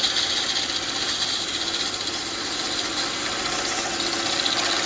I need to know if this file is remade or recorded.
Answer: recorded